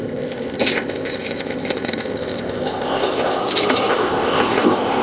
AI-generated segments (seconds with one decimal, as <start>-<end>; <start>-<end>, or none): 0.0-3.4; 3.9-5.0